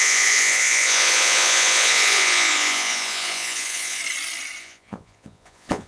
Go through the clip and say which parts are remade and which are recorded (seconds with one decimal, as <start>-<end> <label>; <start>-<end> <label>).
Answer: 0.0-4.0 remade; 4.0-4.6 recorded; 4.6-5.9 remade